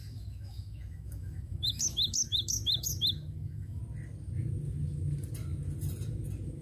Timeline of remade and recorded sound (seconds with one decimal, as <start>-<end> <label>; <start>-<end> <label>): 0.0-3.8 remade; 3.8-6.6 recorded